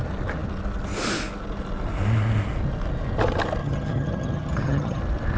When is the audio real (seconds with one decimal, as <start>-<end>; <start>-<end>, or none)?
0.0-3.6; 5.0-5.4